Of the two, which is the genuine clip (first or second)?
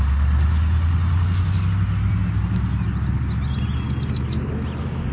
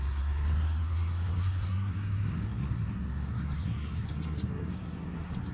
first